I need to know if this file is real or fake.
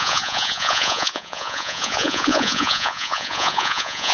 fake